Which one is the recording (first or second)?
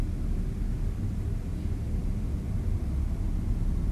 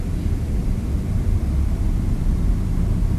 first